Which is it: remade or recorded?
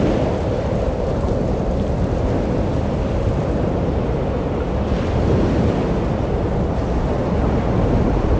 recorded